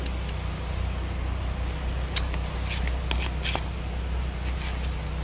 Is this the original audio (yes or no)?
yes